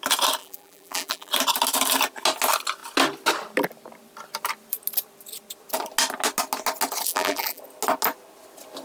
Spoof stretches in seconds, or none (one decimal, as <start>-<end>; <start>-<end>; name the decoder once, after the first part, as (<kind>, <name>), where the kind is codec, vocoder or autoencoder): 0.4-1.3 (vocoder, BigVGAN v2); 7.1-7.6